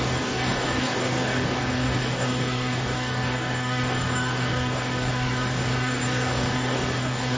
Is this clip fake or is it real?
fake